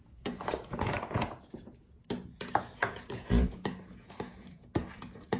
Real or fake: fake